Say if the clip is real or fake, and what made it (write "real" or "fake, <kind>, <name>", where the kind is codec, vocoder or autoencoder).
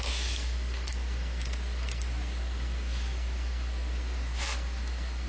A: fake, codec, SNAC